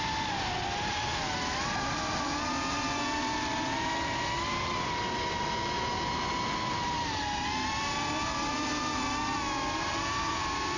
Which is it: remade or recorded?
recorded